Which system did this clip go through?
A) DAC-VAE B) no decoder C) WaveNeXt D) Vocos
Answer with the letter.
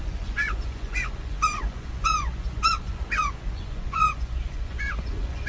D